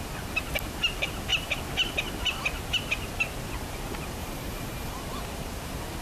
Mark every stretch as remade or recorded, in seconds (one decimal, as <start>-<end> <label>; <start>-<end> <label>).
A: 0.0-4.2 recorded; 4.2-4.9 remade; 4.9-6.0 recorded